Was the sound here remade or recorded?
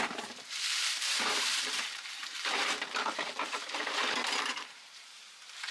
remade